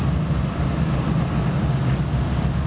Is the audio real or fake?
real